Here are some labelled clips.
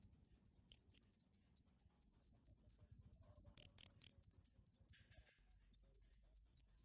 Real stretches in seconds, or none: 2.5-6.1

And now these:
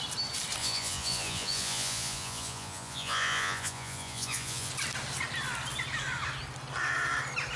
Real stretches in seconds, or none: 0.0-0.6; 4.7-7.6

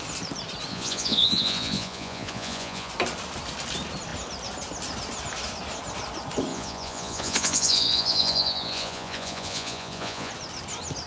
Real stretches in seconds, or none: 0.0-0.7; 2.9-6.5; 10.3-11.1

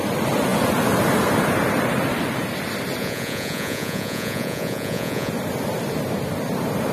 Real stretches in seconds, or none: 0.0-3.0; 5.3-6.9

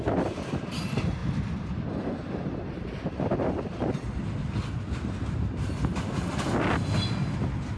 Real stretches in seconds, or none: 0.0-7.8

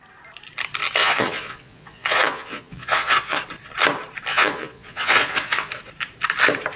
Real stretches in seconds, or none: 0.0-1.0; 3.4-4.3; 5.7-6.8

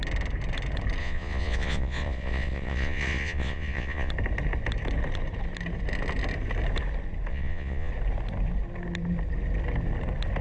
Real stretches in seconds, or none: 0.0-1.0; 4.1-7.3; 7.9-10.4